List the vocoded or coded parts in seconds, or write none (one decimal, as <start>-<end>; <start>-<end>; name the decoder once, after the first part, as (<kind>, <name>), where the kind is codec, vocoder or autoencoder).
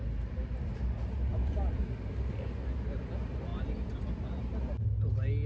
0.4-0.9 (vocoder, BigVGAN v2); 1.3-1.8